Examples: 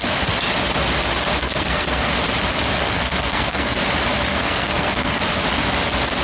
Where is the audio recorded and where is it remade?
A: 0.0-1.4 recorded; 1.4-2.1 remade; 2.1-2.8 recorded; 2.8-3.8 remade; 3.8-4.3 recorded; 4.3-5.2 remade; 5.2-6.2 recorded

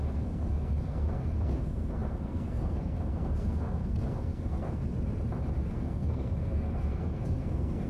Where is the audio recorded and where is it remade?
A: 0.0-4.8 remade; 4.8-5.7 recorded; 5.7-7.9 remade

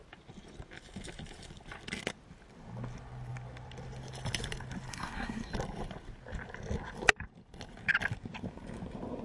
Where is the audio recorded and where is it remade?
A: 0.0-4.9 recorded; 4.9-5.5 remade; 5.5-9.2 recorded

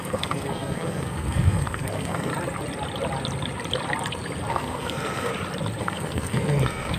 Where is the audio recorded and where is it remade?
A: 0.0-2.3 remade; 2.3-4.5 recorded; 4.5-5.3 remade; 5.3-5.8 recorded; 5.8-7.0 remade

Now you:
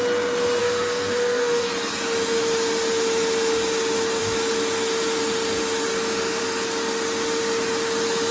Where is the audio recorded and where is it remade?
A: 0.0-0.6 recorded; 0.6-1.7 remade; 1.7-8.3 recorded

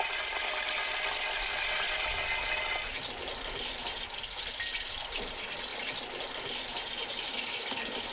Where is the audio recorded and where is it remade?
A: 0.0-8.1 recorded